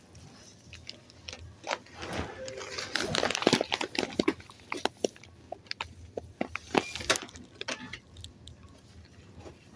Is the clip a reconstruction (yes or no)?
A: no